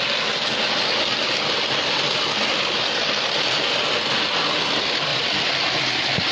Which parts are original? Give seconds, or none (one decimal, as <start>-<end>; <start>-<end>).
0.0-6.3